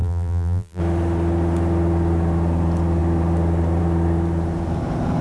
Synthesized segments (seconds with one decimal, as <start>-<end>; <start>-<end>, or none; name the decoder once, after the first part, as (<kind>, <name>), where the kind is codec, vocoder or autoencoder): 0.0-0.8 (vocoder, BigVGAN v2)